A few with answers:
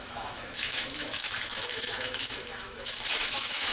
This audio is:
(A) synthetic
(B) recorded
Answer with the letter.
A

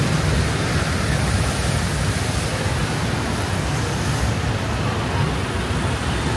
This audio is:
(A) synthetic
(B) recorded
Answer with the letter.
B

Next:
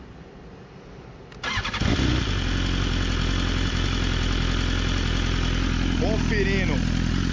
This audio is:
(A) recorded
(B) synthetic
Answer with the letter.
A